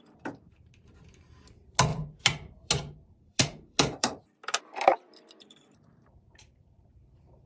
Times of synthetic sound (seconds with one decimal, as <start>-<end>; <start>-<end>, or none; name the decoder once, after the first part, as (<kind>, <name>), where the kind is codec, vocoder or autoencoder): 0.0-7.5 (vocoder, BigVGAN v2)